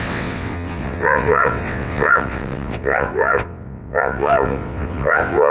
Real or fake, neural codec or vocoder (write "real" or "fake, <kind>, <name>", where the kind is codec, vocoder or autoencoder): fake, vocoder, WaveNeXt